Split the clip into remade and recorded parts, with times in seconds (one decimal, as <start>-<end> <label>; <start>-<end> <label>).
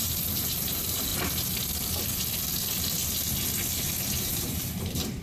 0.0-1.1 remade; 1.1-4.2 recorded; 4.2-5.2 remade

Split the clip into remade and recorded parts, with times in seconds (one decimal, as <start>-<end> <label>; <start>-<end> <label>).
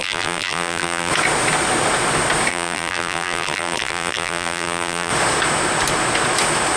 0.0-1.1 remade; 1.1-2.5 recorded; 2.5-5.1 remade; 5.1-6.8 recorded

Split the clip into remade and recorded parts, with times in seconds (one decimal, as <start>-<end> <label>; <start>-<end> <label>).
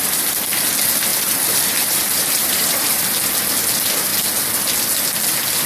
0.0-1.1 recorded; 1.1-3.0 remade; 3.0-5.7 recorded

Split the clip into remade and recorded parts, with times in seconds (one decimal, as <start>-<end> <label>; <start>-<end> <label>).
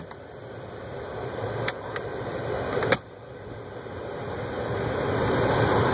0.0-5.9 recorded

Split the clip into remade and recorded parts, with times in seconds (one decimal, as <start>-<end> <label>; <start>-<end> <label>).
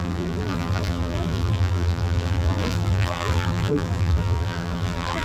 0.0-5.2 remade